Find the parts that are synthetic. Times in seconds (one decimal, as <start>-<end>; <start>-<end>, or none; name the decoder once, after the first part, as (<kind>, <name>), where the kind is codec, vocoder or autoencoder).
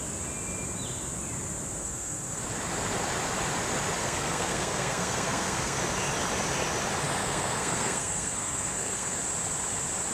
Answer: 1.8-2.4 (codec, SNAC); 4.0-5.8; 7.2-9.2